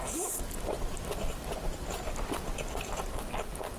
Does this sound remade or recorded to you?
recorded